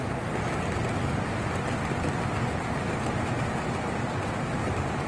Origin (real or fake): real